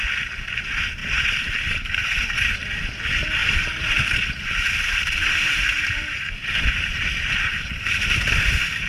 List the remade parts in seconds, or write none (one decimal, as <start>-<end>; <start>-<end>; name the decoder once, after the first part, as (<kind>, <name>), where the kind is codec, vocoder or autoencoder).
3.4-8.9 (vocoder, BigVGAN v2)